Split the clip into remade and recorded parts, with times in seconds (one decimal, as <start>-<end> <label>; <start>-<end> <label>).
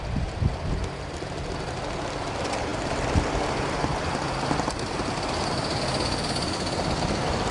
0.0-7.5 recorded